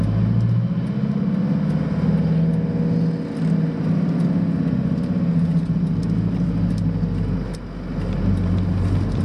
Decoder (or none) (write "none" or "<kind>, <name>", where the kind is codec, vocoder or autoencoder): none